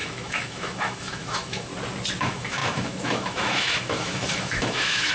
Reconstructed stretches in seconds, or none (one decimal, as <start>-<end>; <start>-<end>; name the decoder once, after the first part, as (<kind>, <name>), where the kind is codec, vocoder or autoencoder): 0.0-1.7 (autoencoder, DAC-VAE); 2.2-5.1